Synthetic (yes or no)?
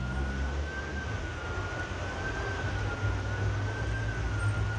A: no